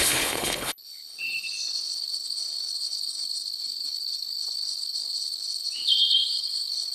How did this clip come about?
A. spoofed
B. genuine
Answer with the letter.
A